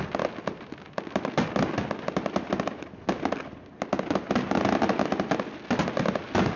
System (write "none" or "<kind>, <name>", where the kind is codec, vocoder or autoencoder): none